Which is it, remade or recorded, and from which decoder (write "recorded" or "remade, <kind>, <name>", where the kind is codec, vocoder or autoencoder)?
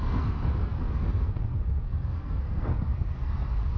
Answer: remade, codec, SNAC